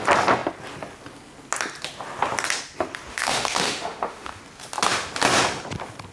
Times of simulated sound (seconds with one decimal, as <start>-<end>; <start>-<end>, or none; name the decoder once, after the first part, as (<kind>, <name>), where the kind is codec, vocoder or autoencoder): 3.1-4.4 (autoencoder, DAC-VAE)